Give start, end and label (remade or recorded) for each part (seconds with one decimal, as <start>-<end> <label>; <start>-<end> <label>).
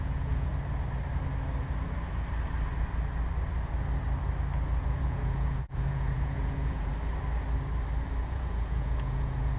0.0-0.5 remade; 0.5-4.8 recorded; 4.8-6.9 remade; 6.9-8.2 recorded; 8.2-9.6 remade